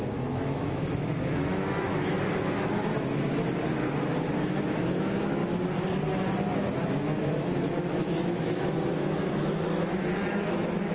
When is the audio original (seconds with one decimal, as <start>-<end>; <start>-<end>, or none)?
5.4-6.9